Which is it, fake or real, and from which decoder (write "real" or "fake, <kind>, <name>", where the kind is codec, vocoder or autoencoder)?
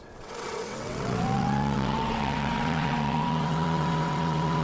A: fake, vocoder, WaveNeXt